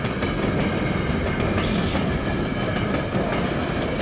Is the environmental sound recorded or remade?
recorded